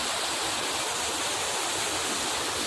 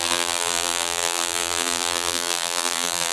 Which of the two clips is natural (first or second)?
first